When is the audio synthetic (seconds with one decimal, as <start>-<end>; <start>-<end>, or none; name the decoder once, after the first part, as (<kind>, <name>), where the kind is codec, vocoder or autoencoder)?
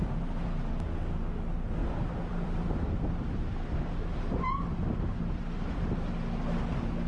1.8-3.5 (vocoder, BigVGAN v2)